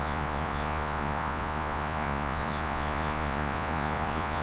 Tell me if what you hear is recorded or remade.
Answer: remade